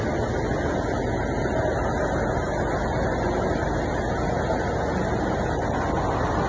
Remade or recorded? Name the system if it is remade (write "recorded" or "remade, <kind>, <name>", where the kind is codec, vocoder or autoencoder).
recorded